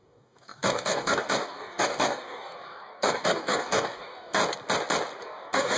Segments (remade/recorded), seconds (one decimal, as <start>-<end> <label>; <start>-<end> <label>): 0.0-4.4 remade; 4.4-5.2 recorded; 5.2-5.8 remade